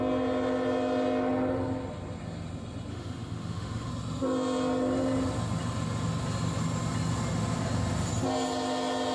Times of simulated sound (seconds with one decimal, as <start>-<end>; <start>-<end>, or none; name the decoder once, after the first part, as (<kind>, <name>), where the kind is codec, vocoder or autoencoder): 2.9-3.9 (autoencoder, DAC-VAE)